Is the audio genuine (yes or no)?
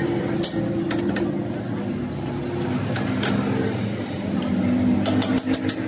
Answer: yes